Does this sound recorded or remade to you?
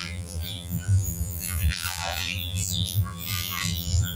remade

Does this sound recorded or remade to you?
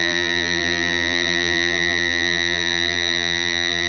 remade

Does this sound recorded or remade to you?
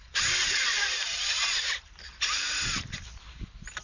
remade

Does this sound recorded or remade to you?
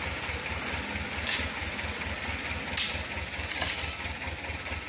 recorded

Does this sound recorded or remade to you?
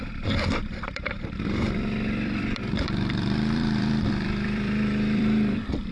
remade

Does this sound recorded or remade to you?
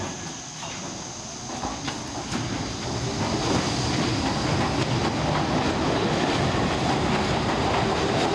recorded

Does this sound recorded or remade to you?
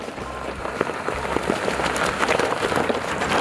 remade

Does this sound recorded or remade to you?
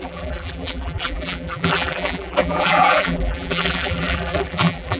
remade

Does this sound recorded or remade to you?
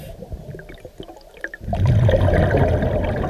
recorded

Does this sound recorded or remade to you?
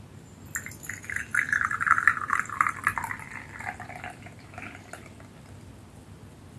recorded